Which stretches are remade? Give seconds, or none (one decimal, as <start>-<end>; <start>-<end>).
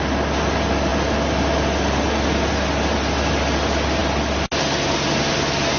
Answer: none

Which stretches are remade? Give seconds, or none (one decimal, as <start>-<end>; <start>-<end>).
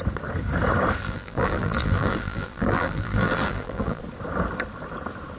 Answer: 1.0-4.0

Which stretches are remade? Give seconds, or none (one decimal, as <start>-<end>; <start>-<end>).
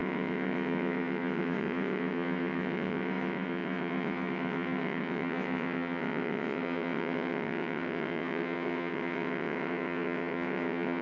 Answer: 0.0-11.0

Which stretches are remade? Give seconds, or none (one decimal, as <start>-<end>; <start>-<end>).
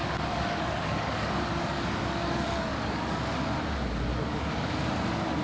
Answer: 0.0-3.2; 4.1-4.7